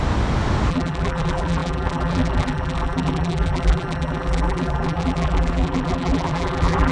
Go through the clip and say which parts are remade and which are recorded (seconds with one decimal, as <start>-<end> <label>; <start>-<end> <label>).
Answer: 0.0-0.7 recorded; 0.7-6.9 remade